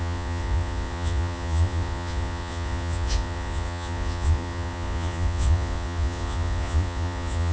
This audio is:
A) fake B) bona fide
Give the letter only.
A